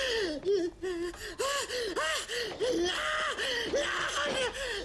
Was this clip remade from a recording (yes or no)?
no